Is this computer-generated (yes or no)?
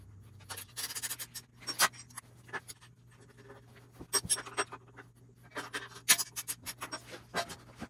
no